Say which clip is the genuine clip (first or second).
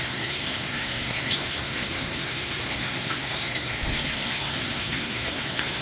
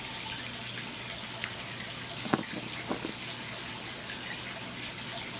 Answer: second